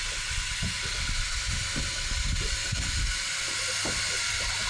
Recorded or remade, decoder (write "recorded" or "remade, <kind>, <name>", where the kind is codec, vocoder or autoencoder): remade, vocoder, BigVGAN v2